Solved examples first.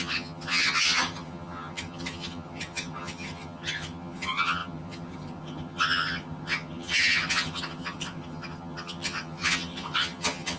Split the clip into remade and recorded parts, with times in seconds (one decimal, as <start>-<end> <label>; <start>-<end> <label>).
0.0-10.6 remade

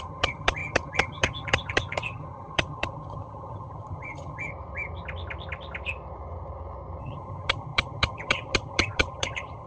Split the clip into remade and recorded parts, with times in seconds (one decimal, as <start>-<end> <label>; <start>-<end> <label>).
0.0-4.5 remade; 4.5-7.0 recorded; 7.0-9.7 remade

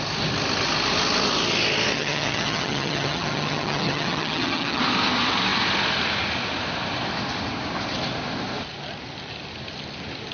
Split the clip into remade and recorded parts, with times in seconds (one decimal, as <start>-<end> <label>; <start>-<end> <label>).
0.0-1.9 recorded; 1.9-4.8 remade; 4.8-10.3 recorded

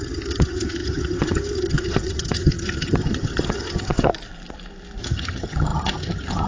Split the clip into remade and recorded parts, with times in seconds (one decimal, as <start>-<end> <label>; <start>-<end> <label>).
0.0-4.1 remade; 4.1-5.0 recorded; 5.0-6.5 remade